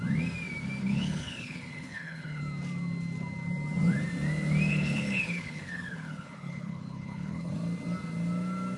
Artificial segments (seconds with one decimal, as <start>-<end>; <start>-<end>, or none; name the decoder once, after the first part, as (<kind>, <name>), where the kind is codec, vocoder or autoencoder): 0.8-2.4 (codec, HILCodec); 4.7-7.5